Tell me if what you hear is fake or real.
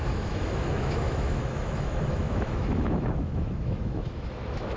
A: fake